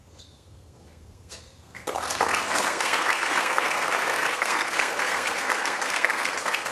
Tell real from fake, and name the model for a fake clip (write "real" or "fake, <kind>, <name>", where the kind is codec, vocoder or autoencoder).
fake, codec, SNAC